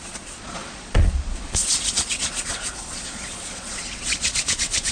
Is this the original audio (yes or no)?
no